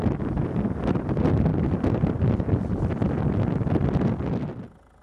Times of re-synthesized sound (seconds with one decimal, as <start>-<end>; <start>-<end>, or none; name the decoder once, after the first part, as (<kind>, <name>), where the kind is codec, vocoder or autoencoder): none